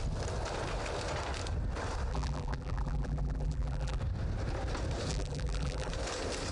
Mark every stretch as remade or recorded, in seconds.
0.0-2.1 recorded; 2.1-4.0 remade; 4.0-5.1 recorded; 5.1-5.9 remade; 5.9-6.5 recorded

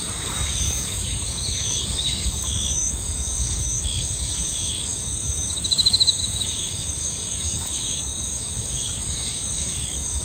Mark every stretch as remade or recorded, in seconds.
0.0-10.2 remade

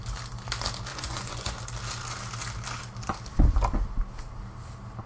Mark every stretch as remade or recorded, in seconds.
0.0-0.9 recorded; 0.9-1.6 remade; 1.6-5.1 recorded